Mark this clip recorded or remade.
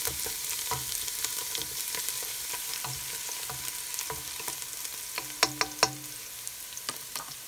recorded